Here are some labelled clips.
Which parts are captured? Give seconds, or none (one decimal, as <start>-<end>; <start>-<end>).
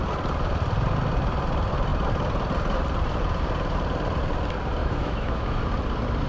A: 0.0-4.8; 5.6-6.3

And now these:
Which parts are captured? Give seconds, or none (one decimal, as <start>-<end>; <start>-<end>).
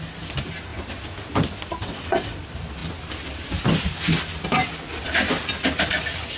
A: 0.0-1.8; 2.4-6.4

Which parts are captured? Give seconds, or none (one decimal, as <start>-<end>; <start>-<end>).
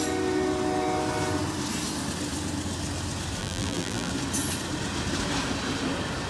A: 0.0-3.4; 4.1-6.3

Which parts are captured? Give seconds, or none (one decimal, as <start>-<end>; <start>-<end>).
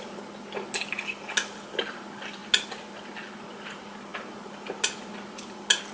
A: 0.0-5.9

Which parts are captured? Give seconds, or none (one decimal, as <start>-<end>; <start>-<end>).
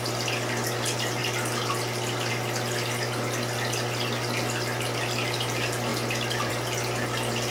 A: 0.0-7.5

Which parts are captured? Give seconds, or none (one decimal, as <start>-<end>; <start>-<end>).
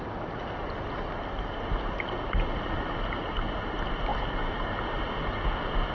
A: 0.0-5.9